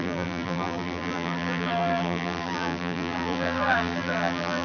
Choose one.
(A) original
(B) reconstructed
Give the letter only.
B